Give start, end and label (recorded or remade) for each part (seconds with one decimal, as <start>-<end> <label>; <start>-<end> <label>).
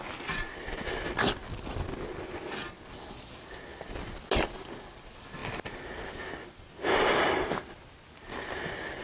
0.0-9.0 recorded